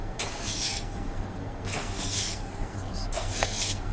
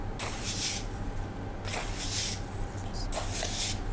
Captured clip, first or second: second